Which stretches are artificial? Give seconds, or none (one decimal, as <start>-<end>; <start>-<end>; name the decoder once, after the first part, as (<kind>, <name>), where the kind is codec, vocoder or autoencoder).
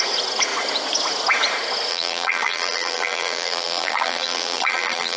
1.9-5.2 (vocoder, BigVGAN v2)